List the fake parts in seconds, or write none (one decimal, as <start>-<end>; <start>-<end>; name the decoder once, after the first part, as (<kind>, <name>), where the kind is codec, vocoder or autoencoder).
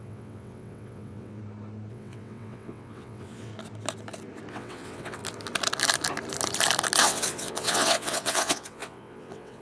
0.0-1.4 (vocoder, WaveNeXt); 1.9-3.5; 4.5-5.2; 7.0-9.6